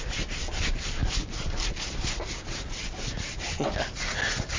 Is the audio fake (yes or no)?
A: no